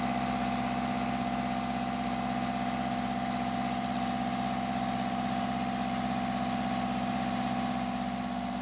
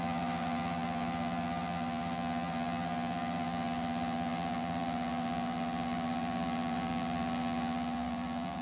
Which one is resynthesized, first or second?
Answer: second